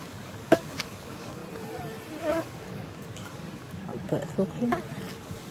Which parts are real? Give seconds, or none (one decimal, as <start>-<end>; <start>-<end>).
1.4-2.2; 3.9-5.1